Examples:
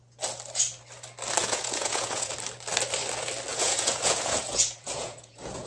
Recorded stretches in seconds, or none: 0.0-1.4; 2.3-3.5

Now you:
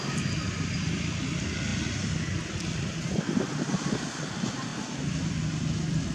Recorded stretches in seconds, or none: 0.0-6.1

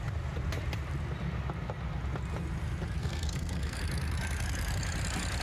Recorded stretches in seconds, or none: 0.0-3.0; 3.8-5.4

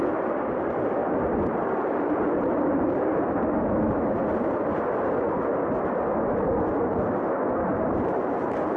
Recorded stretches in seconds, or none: 0.0-1.0; 3.4-7.7

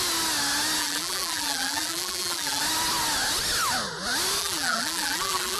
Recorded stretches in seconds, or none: 0.0-0.8; 2.6-4.4

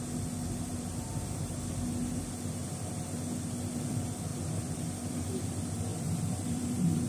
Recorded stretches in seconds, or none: 0.0-4.3; 4.8-5.9